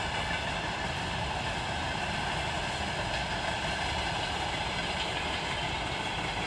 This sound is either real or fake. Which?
real